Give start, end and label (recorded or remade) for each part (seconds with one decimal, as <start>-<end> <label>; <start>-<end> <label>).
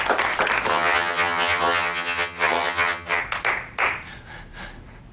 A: 0.0-0.7 recorded; 0.7-3.2 remade; 3.2-5.1 recorded